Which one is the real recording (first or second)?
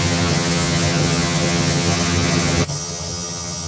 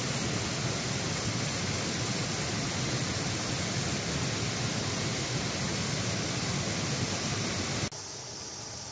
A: second